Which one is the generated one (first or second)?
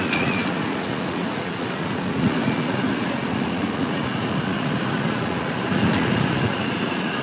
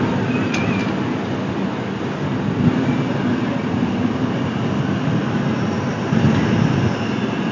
first